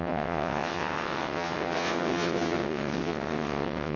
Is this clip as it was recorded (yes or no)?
no